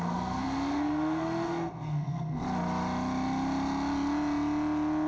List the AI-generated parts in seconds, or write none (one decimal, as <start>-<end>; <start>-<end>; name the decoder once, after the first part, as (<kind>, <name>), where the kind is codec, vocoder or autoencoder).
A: 0.0-2.4 (codec, SNAC)